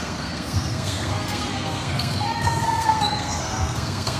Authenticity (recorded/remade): remade